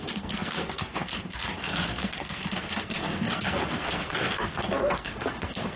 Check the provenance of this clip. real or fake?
fake